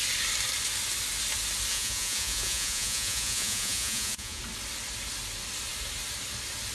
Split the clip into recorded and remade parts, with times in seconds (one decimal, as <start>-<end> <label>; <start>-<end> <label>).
0.0-1.7 recorded; 1.7-4.4 remade; 4.4-6.7 recorded